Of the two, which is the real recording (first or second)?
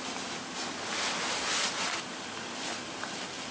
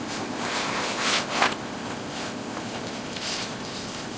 first